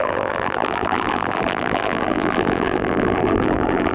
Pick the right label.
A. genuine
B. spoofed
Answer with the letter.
B